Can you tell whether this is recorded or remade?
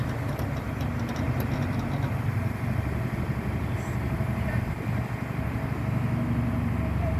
recorded